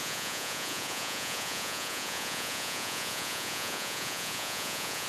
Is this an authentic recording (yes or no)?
no